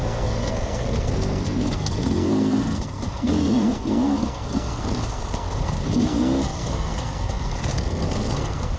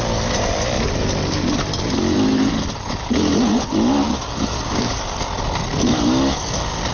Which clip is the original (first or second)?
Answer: second